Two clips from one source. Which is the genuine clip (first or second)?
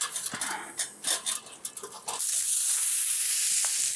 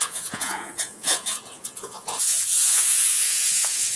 first